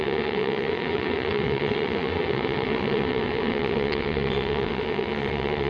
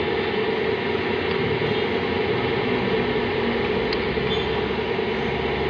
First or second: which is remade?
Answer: first